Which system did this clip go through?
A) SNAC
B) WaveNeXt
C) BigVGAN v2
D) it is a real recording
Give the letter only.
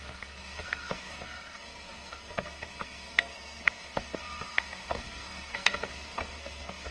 A